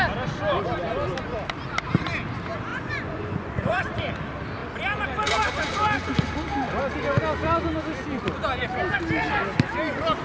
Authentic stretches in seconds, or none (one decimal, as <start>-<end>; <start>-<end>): 0.0-2.7; 3.8-10.2